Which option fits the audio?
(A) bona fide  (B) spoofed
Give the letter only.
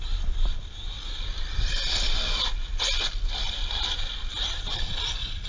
A